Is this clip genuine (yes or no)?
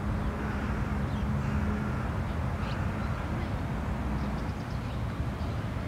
yes